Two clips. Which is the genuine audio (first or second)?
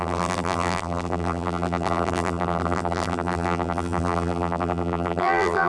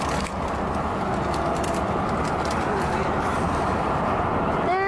second